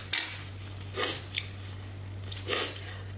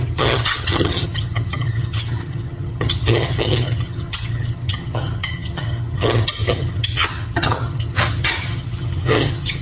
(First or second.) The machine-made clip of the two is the second